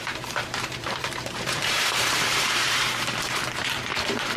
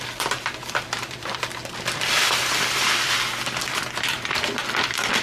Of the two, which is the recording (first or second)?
second